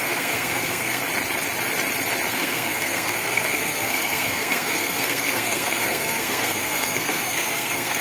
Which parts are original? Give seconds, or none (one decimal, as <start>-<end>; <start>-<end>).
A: 1.0-2.3